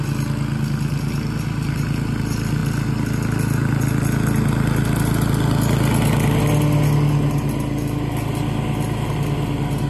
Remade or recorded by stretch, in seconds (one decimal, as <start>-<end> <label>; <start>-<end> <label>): 0.0-9.9 recorded

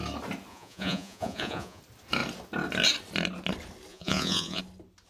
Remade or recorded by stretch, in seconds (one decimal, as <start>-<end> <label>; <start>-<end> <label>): 0.0-0.5 recorded; 0.5-1.8 remade; 1.8-3.9 recorded; 3.9-4.6 remade; 4.6-5.1 recorded

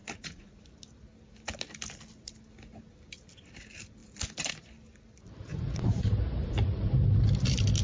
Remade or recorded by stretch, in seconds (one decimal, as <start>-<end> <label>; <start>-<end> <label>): 0.0-0.6 remade; 0.6-5.5 recorded; 5.5-6.0 remade; 6.0-7.8 recorded

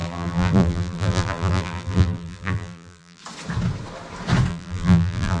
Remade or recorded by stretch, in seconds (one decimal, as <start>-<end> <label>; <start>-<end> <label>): 0.0-3.2 remade; 3.2-4.5 recorded; 4.5-5.4 remade

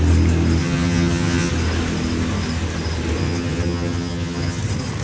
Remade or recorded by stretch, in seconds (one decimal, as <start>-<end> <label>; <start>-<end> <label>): 0.0-0.6 recorded; 0.6-1.5 remade; 1.5-3.2 recorded; 3.2-4.6 remade; 4.6-5.0 recorded